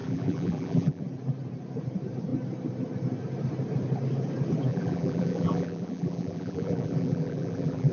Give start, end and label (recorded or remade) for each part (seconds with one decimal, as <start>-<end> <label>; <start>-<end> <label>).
0.0-1.0 remade; 1.0-4.7 recorded; 4.7-7.9 remade